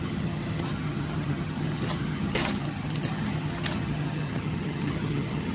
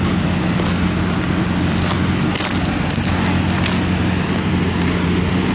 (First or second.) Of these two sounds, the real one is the second